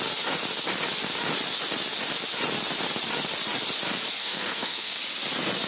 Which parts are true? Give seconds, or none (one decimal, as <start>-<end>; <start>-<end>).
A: 0.0-4.2; 5.0-5.7